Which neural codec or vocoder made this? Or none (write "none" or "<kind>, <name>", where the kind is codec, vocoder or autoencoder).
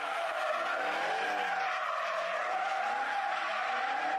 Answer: none